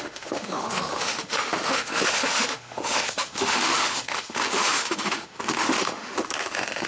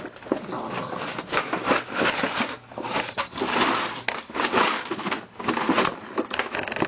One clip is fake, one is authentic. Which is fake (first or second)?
first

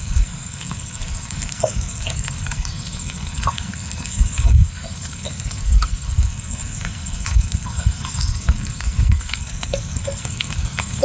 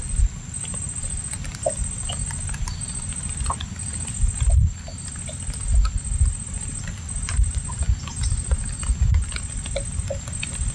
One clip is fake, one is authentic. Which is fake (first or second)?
first